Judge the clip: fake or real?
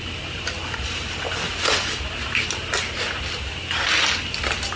real